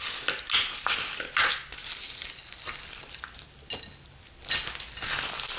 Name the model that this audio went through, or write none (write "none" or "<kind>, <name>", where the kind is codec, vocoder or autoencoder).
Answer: none